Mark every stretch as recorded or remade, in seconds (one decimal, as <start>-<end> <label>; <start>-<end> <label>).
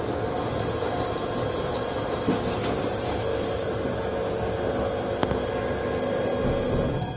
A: 0.0-7.2 recorded